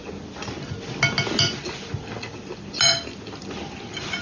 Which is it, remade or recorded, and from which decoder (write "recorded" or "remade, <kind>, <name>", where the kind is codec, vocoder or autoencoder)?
recorded